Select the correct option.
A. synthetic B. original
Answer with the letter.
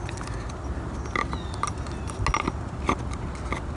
B